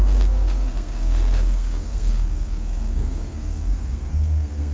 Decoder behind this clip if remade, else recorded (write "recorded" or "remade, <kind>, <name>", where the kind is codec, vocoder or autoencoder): remade, codec, SNAC